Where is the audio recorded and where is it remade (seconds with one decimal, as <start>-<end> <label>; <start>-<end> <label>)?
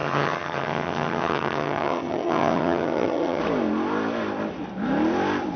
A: 0.0-3.4 remade; 3.4-5.6 recorded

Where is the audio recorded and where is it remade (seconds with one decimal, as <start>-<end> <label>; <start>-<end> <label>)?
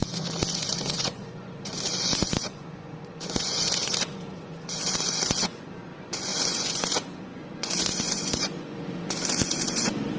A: 0.0-10.2 remade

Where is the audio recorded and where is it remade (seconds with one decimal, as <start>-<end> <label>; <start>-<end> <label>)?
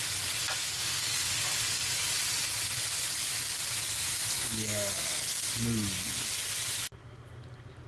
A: 0.0-0.7 recorded; 0.7-1.3 remade; 1.3-3.9 recorded; 3.9-5.4 remade; 5.4-7.9 recorded